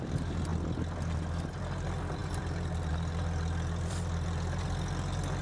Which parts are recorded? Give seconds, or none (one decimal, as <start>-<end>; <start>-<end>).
0.5-1.5

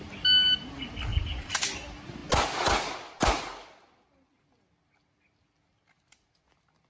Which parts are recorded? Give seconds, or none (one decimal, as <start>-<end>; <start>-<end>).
0.0-1.1; 1.6-6.9

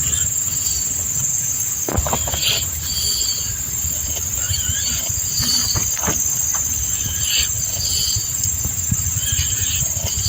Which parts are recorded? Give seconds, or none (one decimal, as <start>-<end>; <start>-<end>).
0.0-10.3

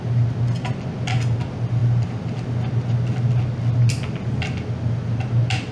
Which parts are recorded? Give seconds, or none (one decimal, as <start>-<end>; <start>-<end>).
0.0-5.7

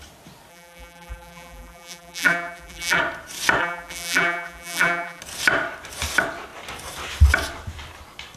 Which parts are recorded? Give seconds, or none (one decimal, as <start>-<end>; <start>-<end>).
0.0-0.5; 3.0-3.6; 5.2-8.4